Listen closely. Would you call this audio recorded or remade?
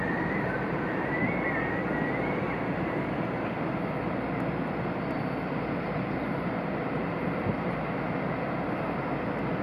recorded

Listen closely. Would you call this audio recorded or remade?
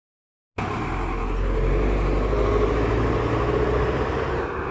recorded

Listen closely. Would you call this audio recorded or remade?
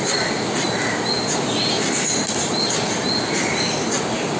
recorded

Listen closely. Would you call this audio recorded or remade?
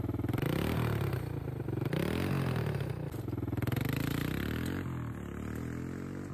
recorded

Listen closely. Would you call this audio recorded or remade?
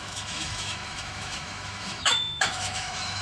remade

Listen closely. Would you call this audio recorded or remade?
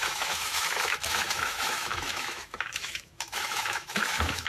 remade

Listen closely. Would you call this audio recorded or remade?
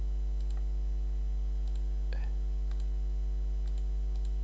recorded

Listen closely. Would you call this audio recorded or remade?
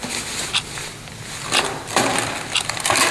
recorded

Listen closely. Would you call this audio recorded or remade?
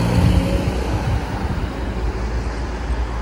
recorded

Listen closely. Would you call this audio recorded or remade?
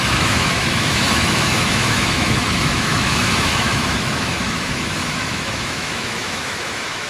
remade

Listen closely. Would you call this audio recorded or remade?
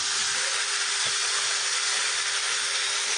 recorded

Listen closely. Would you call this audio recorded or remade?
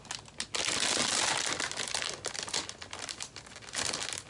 recorded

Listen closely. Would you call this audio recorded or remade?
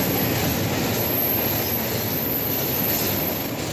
recorded